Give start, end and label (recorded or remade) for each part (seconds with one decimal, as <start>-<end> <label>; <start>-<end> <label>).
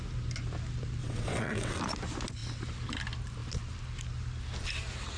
0.0-1.0 recorded; 1.0-1.8 remade; 1.8-5.2 recorded